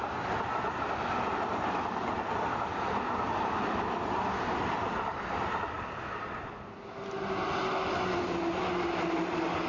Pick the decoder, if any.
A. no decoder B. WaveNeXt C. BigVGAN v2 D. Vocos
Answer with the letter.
A